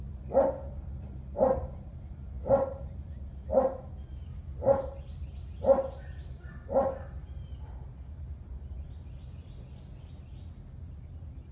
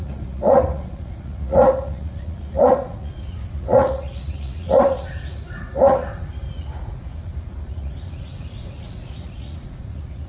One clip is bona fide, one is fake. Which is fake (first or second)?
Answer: second